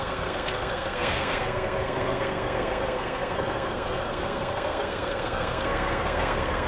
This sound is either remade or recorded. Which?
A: remade